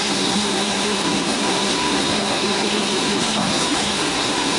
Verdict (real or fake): fake